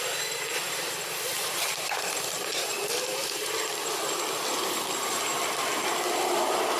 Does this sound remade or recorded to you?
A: remade